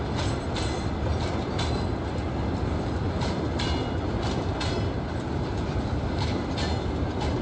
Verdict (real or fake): real